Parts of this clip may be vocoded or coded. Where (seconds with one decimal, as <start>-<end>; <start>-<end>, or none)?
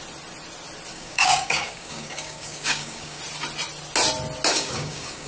0.9-3.2; 4.5-5.3